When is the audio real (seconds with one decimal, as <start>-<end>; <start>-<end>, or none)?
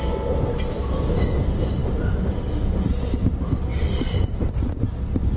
0.0-5.4